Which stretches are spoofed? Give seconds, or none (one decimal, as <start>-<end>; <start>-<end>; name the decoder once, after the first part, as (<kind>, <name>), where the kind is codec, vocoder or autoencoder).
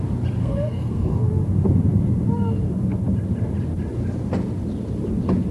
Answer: 0.4-1.3 (codec, SNAC)